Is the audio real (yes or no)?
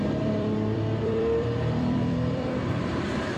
no